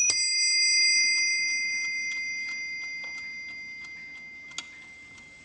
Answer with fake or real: real